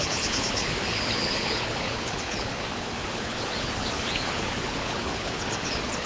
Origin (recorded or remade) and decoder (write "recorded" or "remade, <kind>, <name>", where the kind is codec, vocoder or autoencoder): remade, codec, HILCodec